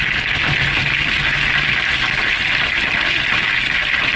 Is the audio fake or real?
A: real